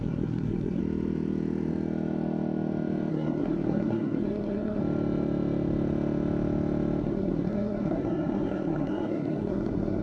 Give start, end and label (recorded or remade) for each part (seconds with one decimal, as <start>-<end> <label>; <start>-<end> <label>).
0.0-0.8 remade; 0.8-3.1 recorded; 3.1-4.8 remade; 4.8-7.0 recorded; 7.0-10.0 remade

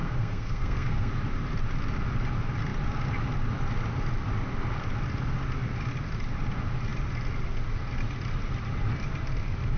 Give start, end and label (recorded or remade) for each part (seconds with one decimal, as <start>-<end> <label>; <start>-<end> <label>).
0.0-1.1 remade; 1.1-9.8 recorded

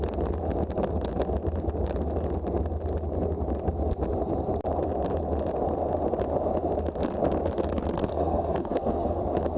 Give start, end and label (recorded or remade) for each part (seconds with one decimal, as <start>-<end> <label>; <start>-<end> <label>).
0.0-8.1 recorded; 8.1-9.2 remade; 9.2-9.6 recorded

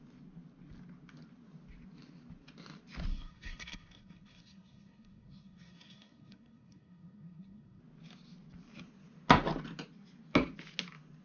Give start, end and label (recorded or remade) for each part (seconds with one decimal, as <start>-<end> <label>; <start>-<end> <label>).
0.0-3.1 recorded; 3.1-7.8 remade; 7.8-11.2 recorded

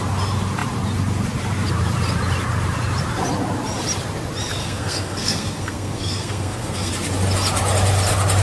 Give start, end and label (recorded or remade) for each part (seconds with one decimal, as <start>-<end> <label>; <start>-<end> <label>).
0.0-4.6 recorded; 4.6-6.9 remade; 6.9-8.4 recorded

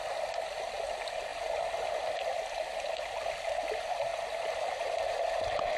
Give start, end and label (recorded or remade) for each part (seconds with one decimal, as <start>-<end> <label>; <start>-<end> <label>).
0.0-5.8 recorded